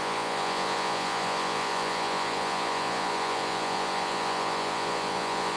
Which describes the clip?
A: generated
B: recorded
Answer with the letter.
A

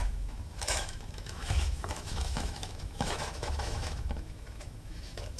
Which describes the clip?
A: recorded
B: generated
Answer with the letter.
B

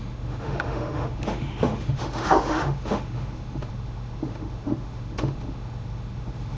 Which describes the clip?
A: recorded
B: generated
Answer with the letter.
B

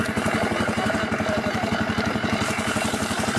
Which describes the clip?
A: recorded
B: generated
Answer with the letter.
B